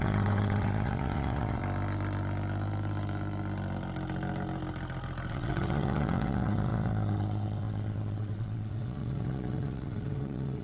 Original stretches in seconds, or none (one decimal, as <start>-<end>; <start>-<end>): 1.6-5.3